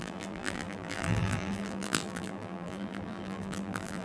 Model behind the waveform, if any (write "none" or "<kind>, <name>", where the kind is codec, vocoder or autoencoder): vocoder, BigVGAN v2